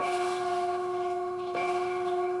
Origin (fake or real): fake